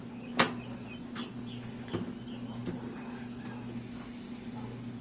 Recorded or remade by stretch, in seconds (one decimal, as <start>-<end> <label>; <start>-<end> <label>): 0.0-5.0 recorded